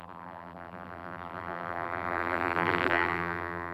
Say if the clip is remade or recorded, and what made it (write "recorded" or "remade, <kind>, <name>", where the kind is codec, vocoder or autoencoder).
remade, vocoder, BigVGAN v2